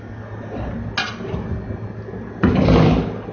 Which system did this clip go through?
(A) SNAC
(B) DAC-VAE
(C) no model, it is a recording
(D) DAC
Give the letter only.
C